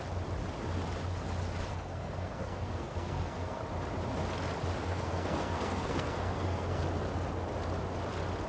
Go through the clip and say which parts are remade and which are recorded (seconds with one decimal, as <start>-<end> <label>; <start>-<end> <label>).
0.0-1.7 recorded; 1.7-3.6 remade; 3.6-4.8 recorded; 4.8-6.8 remade; 6.8-8.5 recorded